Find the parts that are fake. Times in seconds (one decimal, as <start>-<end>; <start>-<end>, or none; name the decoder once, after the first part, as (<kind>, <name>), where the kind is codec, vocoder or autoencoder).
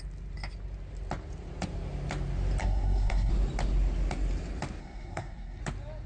2.6-3.3 (codec, SNAC); 4.8-5.6